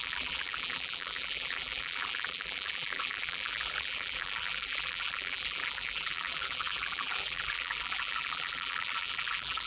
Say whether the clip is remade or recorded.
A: remade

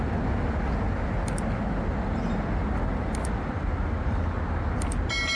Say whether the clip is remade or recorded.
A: recorded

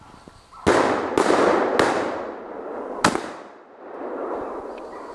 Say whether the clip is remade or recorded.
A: recorded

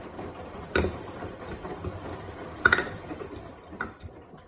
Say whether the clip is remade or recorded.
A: recorded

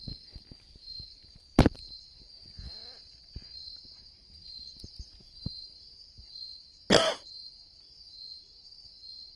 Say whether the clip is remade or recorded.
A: recorded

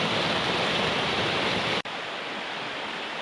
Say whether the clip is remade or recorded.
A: recorded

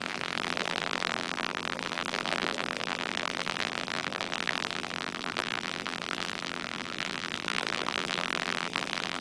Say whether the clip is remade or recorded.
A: remade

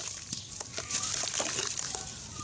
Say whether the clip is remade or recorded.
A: recorded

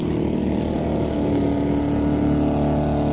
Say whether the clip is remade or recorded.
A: recorded